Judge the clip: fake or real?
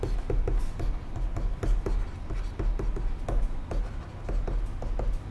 real